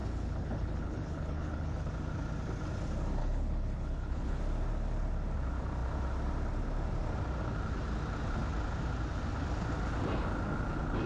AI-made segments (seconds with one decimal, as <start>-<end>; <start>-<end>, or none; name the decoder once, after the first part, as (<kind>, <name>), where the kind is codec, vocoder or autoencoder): 0.0-1.9 (codec, HILCodec); 3.2-4.4